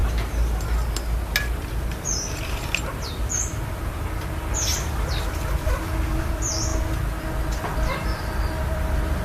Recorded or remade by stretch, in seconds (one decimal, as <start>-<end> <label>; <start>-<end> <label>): 0.0-5.2 recorded; 5.2-6.7 remade; 6.7-7.5 recorded; 7.5-9.2 remade